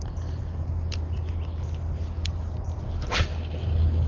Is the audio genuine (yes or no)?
yes